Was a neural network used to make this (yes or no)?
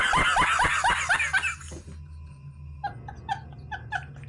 no